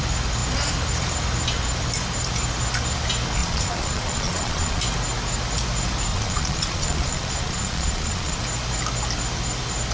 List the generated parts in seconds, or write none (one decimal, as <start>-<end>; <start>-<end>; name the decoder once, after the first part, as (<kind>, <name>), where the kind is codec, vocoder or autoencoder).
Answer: 3.4-4.8 (vocoder, Vocos); 6.1-8.4